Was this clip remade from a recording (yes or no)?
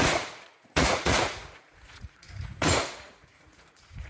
yes